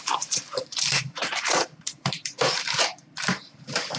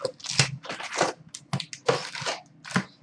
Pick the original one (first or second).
second